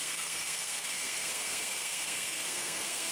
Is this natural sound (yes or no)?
no